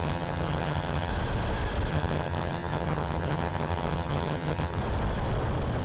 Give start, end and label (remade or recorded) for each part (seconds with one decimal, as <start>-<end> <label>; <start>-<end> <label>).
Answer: 0.0-1.1 remade; 1.1-1.9 recorded; 1.9-4.8 remade; 4.8-5.8 recorded